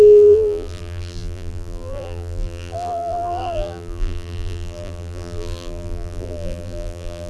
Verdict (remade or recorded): remade